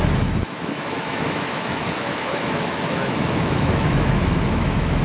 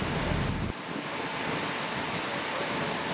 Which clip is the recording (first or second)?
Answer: second